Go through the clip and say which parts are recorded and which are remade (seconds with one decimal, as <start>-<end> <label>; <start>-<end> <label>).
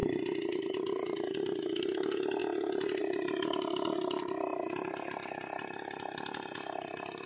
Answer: 0.0-7.3 recorded